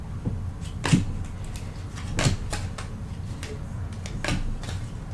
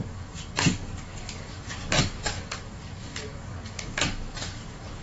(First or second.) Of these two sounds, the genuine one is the first